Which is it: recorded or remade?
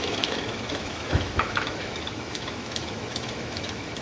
remade